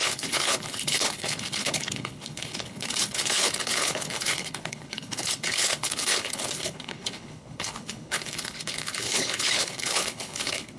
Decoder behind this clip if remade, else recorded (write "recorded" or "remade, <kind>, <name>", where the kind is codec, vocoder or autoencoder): remade, codec, HILCodec